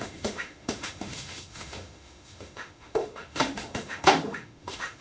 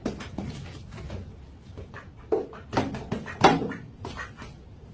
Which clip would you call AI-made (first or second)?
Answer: first